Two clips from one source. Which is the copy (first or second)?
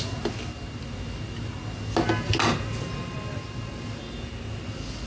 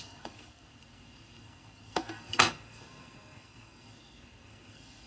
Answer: second